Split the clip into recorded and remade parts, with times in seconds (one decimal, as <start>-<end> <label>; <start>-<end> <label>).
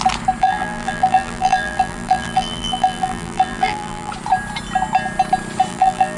0.0-0.4 recorded; 0.4-4.1 remade; 4.1-5.7 recorded; 5.7-6.2 remade